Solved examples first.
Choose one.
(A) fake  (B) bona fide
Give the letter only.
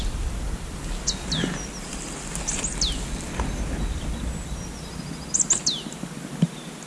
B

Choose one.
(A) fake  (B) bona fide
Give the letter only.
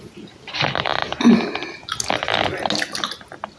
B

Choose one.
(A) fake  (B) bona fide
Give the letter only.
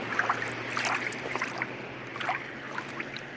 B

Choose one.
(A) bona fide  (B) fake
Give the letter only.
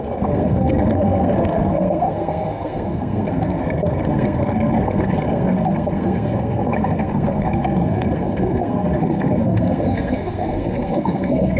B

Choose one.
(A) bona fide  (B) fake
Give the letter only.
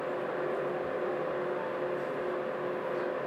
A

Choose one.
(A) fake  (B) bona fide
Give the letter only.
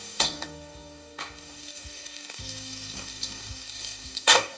A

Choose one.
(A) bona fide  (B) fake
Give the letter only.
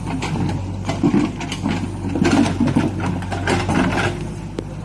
A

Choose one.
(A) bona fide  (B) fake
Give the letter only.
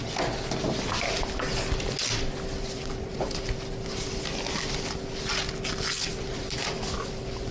A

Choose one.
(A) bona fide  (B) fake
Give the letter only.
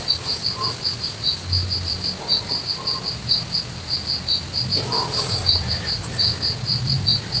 A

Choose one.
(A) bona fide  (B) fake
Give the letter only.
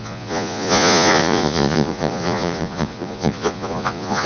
B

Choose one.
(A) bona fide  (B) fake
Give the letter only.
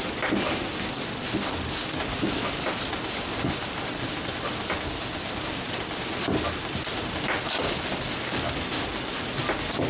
A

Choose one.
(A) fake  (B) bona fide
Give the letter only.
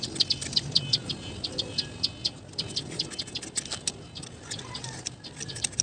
B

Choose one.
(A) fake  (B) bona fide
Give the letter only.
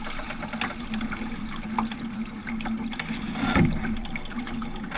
B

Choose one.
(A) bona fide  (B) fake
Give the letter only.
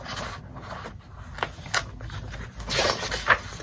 A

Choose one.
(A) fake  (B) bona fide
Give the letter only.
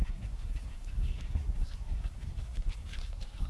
A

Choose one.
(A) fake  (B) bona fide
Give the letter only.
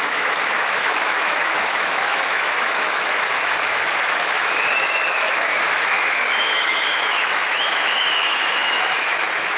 A